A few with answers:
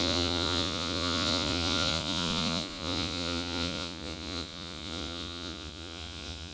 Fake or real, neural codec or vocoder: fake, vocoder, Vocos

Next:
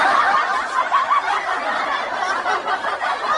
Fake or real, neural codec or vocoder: real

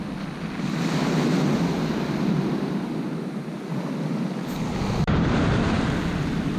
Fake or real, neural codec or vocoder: real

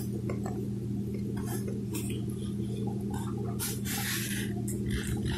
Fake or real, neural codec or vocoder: real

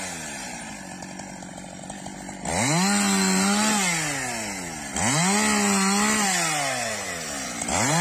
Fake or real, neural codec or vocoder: real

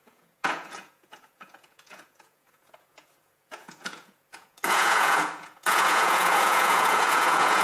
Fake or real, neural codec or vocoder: fake, vocoder, Vocos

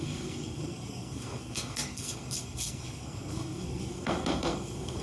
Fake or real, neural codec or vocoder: fake, codec, SNAC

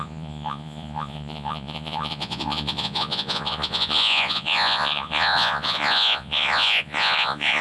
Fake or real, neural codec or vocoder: fake, vocoder, Vocos